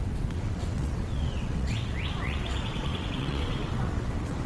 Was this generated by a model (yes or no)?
yes